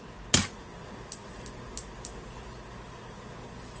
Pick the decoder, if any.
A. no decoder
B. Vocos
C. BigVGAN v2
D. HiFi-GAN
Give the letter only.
A